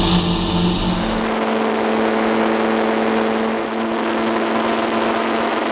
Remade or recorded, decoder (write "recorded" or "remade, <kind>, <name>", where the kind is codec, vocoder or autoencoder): recorded